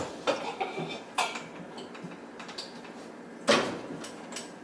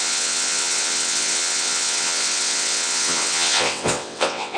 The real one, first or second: first